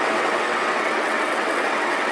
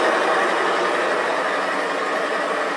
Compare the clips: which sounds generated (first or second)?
first